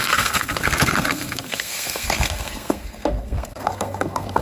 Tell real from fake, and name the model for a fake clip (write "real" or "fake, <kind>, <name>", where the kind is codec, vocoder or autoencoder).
fake, codec, SNAC